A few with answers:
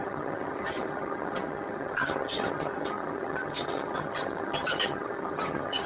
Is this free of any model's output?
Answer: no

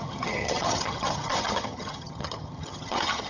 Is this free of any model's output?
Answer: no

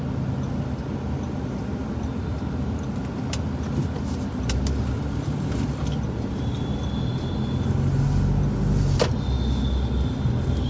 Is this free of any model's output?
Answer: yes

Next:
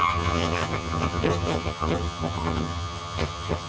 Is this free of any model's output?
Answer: no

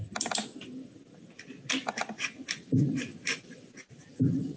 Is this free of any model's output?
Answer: yes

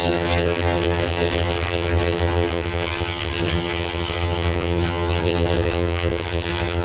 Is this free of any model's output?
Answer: no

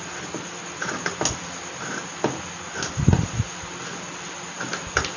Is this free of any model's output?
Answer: yes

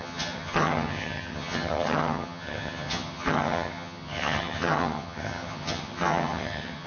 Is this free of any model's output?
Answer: no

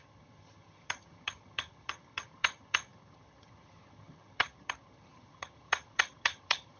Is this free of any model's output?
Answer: no